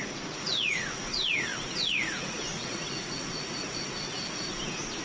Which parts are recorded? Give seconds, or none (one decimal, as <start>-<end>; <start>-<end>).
none